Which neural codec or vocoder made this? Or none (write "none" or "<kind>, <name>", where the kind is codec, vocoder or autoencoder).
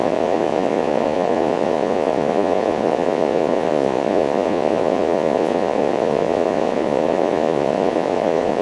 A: vocoder, Vocos